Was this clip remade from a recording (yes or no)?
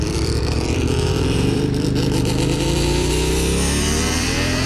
yes